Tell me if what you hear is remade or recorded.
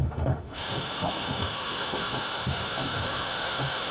remade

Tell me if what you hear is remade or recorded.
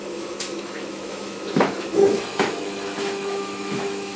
remade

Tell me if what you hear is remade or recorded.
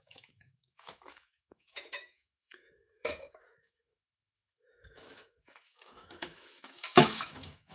remade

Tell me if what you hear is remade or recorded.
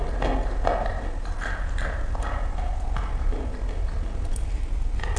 recorded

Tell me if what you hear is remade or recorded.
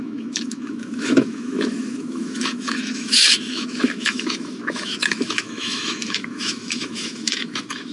remade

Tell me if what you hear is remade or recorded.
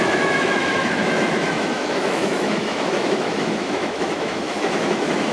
remade